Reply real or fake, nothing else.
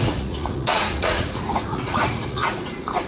fake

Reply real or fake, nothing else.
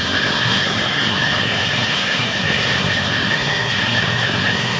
fake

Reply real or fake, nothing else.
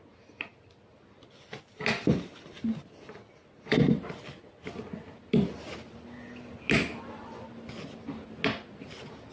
real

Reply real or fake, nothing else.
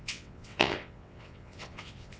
fake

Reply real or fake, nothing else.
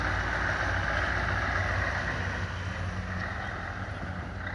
real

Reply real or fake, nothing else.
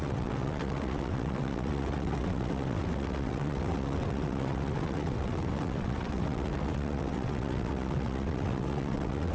fake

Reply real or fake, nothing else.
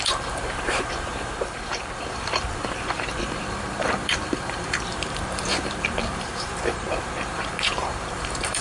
fake